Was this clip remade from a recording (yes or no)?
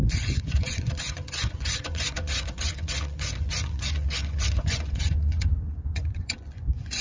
yes